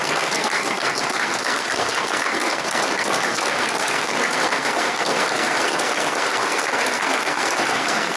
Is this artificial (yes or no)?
yes